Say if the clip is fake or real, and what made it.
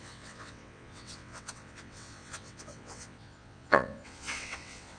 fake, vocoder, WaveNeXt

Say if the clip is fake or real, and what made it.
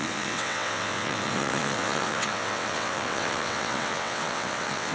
fake, vocoder, WaveNeXt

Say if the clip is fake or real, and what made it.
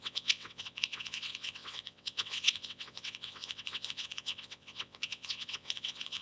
fake, vocoder, WaveNeXt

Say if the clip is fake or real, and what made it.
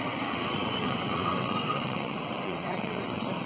fake, vocoder, WaveNeXt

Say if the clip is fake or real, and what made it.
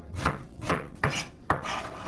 fake, vocoder, WaveNeXt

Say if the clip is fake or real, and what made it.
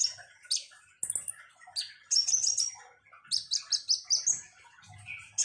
real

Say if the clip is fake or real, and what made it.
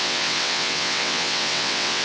fake, vocoder, WaveNeXt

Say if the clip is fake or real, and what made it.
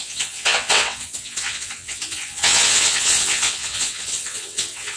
fake, vocoder, WaveNeXt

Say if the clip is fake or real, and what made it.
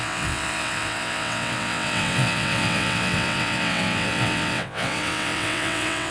fake, vocoder, WaveNeXt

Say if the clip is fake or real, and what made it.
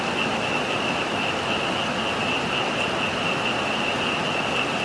real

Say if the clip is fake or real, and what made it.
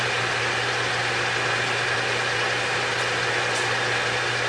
real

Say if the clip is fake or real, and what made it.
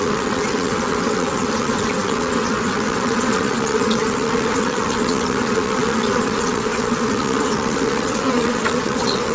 fake, vocoder, WaveNeXt